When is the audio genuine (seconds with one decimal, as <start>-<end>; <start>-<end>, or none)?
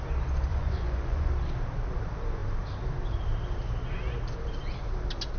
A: 0.0-0.5; 1.3-5.4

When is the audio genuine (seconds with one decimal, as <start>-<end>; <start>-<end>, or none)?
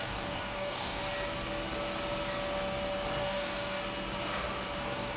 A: 1.0-3.2; 3.8-4.8